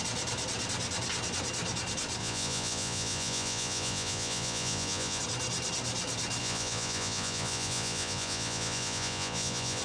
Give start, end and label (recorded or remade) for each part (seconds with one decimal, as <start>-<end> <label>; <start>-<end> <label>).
0.0-2.2 recorded; 2.2-5.2 remade; 5.2-6.4 recorded; 6.4-9.8 remade